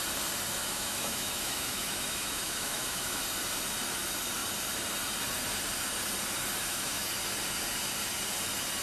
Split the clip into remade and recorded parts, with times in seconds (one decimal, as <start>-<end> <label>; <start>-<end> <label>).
0.0-0.6 recorded; 0.6-3.2 remade; 3.2-6.6 recorded; 6.6-7.1 remade; 7.1-8.8 recorded